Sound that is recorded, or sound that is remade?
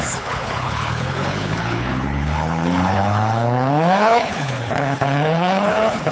remade